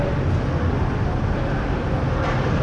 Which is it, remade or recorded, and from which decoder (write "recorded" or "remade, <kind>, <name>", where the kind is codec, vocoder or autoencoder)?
recorded